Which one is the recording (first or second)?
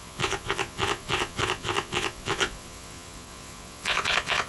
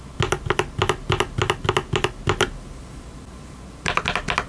second